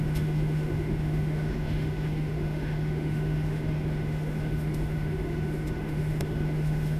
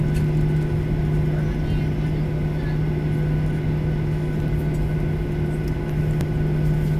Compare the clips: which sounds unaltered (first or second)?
second